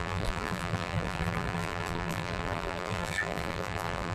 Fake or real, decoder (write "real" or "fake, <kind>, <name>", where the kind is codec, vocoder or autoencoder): fake, vocoder, BigVGAN v2